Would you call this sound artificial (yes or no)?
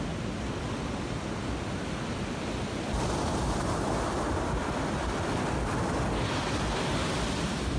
no